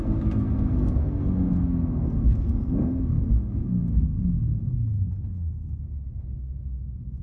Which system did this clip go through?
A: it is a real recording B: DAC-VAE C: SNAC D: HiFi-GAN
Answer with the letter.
C